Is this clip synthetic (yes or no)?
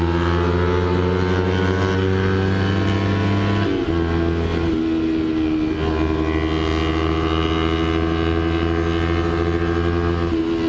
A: no